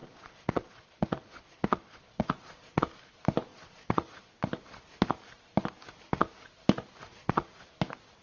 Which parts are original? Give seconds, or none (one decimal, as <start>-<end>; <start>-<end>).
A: 2.8-3.5; 4.3-7.2; 7.7-8.2